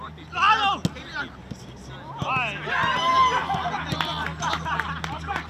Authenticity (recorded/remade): recorded